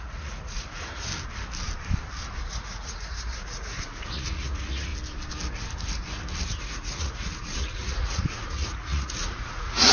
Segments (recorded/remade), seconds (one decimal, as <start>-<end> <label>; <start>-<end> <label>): 0.0-1.1 remade; 1.1-2.4 recorded; 2.4-4.9 remade; 4.9-6.6 recorded; 6.6-9.9 remade